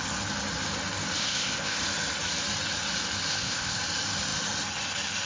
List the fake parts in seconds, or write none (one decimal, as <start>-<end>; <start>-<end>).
1.2-1.8; 3.3-3.8